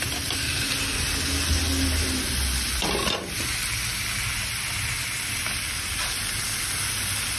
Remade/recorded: recorded